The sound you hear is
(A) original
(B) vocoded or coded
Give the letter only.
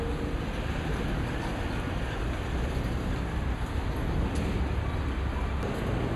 A